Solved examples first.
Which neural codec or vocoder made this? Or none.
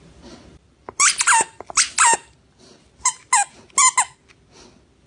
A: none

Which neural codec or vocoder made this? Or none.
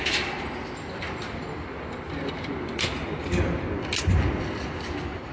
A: none